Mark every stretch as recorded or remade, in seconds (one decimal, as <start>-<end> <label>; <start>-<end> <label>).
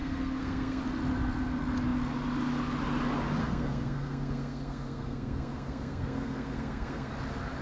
0.0-0.8 remade; 0.8-3.4 recorded; 3.4-7.1 remade; 7.1-7.6 recorded